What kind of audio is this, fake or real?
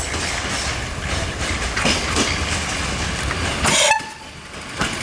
real